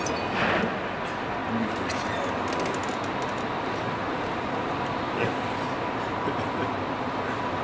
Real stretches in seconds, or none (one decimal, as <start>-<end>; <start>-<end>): 0.0-7.6